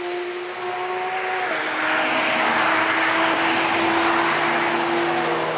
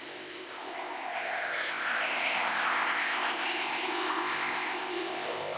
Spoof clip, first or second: second